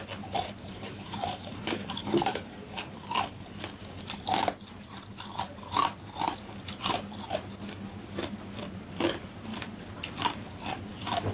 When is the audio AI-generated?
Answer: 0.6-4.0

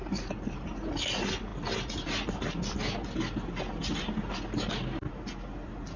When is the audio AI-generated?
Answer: none

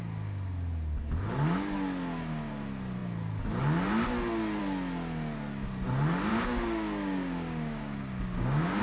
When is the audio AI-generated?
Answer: 6.3-8.8

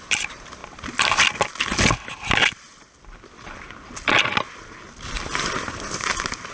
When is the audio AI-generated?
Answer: none

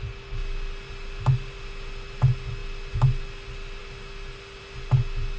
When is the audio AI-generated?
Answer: none